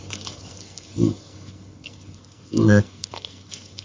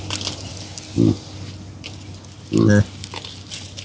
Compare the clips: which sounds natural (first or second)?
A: second